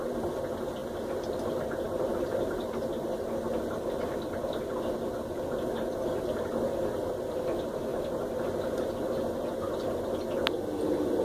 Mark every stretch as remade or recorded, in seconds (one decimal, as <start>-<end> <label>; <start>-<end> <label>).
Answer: 0.0-11.2 recorded